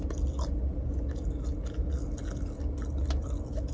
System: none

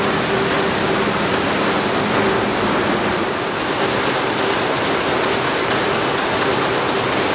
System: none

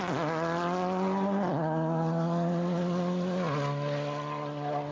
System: none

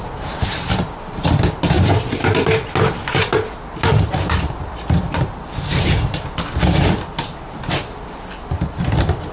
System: none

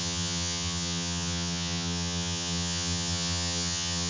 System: vocoder, HiFi-GAN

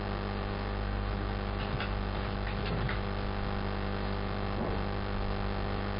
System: none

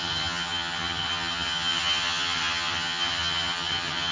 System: vocoder, HiFi-GAN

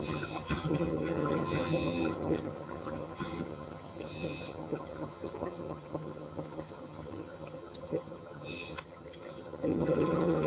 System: vocoder, HiFi-GAN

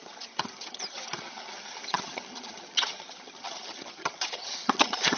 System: vocoder, HiFi-GAN